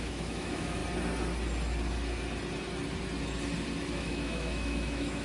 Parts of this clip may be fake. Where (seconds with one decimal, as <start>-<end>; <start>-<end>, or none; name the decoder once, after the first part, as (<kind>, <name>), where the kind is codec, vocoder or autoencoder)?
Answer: 0.0-0.8 (autoencoder, DAC-VAE); 3.9-5.2